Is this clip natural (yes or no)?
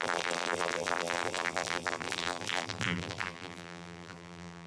no